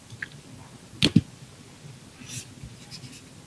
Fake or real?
real